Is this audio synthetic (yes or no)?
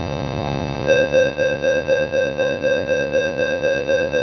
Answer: yes